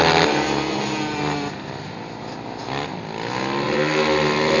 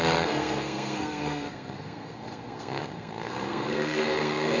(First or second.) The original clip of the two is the first